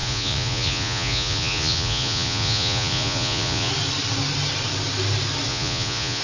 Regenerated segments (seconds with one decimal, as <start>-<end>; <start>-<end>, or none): 0.0-3.7; 5.5-6.2